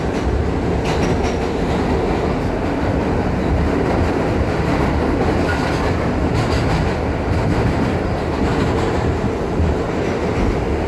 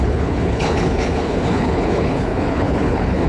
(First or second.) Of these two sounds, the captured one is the first